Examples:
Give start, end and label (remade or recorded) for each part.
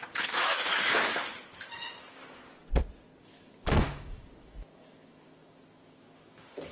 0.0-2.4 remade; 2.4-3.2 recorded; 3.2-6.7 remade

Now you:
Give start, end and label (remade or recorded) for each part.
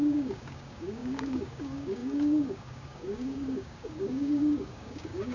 0.0-5.3 remade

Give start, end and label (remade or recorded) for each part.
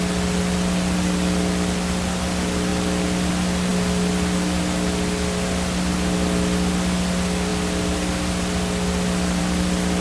0.0-10.0 recorded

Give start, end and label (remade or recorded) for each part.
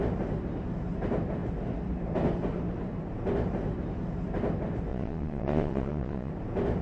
0.0-4.9 recorded; 4.9-6.3 remade; 6.3-6.8 recorded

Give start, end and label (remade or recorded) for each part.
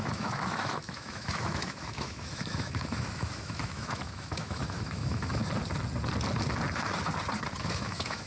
0.0-5.4 remade; 5.4-7.6 recorded; 7.6-8.3 remade